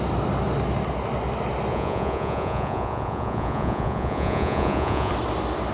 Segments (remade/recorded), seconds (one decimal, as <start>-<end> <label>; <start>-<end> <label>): 0.0-1.7 recorded; 1.7-5.1 remade; 5.1-5.7 recorded